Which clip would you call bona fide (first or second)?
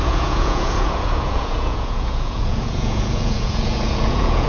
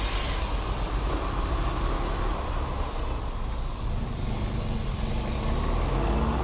second